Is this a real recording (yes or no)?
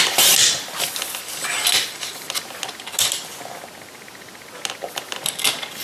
yes